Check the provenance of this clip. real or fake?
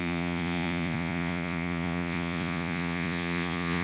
fake